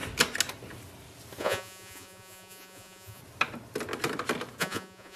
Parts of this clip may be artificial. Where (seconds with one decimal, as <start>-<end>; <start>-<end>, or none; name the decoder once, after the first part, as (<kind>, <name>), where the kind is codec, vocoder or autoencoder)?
1.4-3.2 (vocoder, Vocos); 4.6-5.2